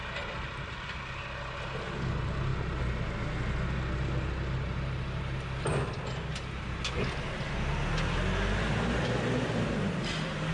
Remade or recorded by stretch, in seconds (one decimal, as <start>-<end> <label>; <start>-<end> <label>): 0.0-10.5 recorded